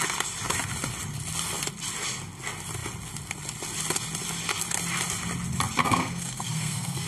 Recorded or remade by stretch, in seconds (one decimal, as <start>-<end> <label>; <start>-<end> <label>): 0.0-5.8 recorded; 5.8-7.1 remade